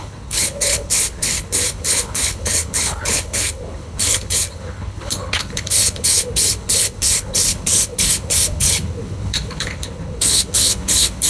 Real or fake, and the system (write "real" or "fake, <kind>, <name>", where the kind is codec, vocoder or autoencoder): fake, codec, HILCodec